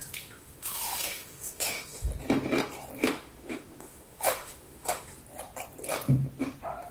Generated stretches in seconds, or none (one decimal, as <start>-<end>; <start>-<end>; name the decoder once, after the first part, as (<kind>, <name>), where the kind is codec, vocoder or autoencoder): 0.0-2.1 (autoencoder, DAC-VAE); 3.0-5.2

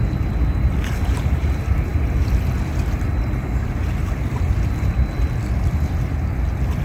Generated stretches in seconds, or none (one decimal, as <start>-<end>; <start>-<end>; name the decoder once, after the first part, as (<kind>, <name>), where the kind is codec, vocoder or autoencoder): none

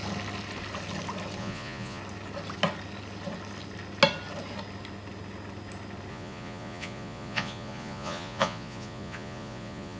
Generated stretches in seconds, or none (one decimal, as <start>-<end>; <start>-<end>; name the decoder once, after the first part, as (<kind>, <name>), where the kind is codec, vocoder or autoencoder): 1.4-2.0 (vocoder, Vocos); 6.1-10.0

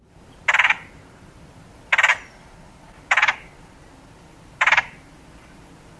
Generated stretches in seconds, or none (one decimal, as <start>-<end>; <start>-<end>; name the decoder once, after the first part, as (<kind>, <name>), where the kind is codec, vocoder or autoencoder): 0.0-2.1 (vocoder, BigVGAN v2); 4.2-6.0

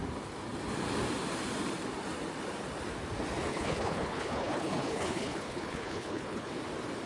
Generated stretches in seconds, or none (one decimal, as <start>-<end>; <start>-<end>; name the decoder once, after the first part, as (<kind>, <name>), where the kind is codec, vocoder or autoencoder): 3.5-6.5 (codec, HILCodec)

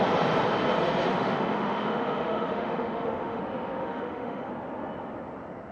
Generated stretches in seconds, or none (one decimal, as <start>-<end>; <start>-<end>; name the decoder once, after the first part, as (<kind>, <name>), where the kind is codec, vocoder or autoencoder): 1.1-3.4 (autoencoder, DAC-VAE); 3.8-4.5

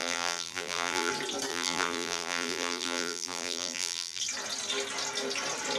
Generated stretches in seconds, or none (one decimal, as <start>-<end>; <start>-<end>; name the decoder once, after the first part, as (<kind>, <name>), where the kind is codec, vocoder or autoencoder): 0.0-1.1 (vocoder, BigVGAN v2); 1.5-4.2